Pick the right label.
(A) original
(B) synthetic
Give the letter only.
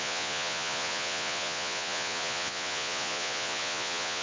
B